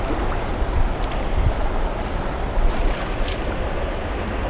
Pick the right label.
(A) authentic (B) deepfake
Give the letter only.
A